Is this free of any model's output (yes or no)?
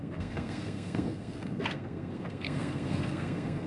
no